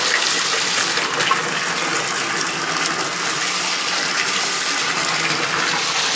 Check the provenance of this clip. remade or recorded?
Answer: recorded